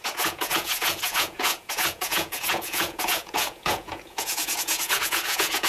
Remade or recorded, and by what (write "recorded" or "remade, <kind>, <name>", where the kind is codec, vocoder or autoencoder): remade, vocoder, Vocos